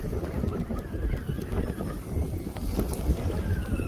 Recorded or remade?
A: recorded